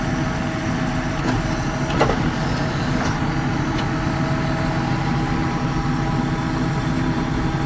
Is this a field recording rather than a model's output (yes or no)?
yes